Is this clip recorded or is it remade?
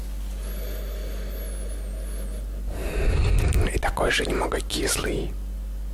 recorded